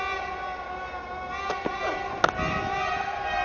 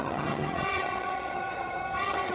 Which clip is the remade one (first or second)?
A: second